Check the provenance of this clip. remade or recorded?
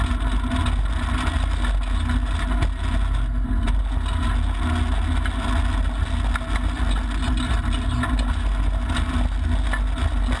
recorded